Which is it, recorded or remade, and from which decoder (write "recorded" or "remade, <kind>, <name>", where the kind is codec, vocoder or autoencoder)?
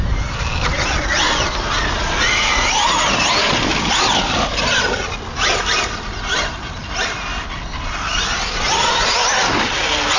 recorded